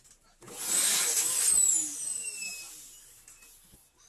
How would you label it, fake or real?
real